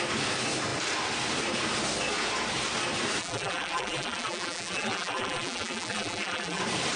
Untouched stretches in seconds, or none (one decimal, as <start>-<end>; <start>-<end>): 0.0-3.2; 6.6-7.0

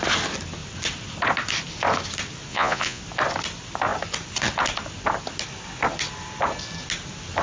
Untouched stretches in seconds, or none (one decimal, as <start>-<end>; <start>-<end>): 0.0-2.5; 3.0-7.4

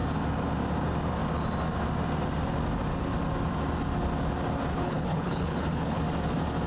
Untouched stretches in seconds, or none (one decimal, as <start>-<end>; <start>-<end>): 0.0-4.7; 6.0-6.7

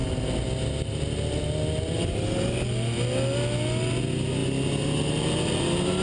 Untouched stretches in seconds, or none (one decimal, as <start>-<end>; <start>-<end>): 0.0-6.0

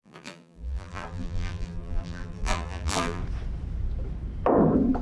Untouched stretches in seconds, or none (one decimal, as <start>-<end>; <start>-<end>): 3.2-5.0